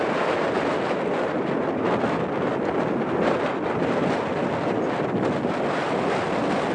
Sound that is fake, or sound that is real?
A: real